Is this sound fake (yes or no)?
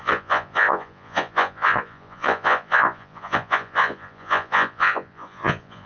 yes